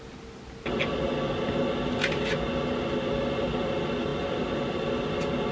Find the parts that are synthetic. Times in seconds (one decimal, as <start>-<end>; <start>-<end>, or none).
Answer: none